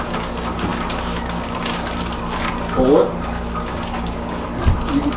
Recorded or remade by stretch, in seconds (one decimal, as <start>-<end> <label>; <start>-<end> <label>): 0.0-3.7 recorded; 3.7-4.5 remade; 4.5-5.2 recorded